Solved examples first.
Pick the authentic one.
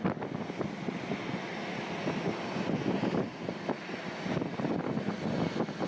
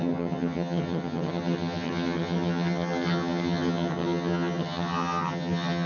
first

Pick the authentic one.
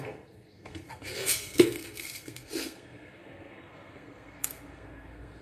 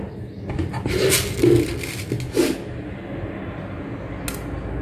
second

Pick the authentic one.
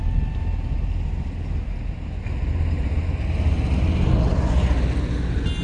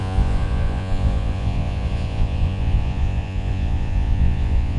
first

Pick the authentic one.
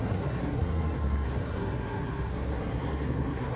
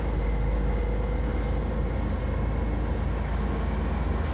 second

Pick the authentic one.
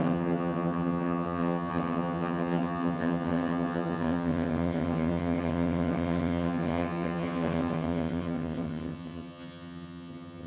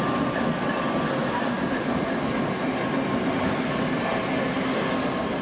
second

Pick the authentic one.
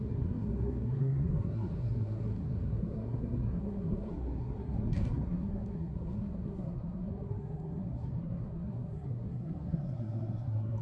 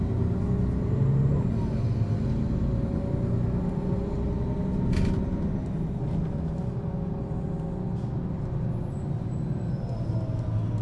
second